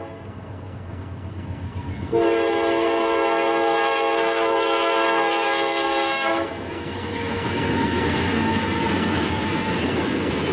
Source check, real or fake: fake